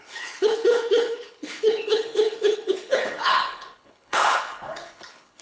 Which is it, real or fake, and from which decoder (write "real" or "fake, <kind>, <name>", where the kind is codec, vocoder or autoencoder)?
fake, codec, HILCodec